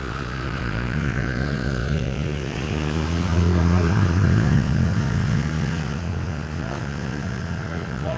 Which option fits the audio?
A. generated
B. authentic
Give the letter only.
A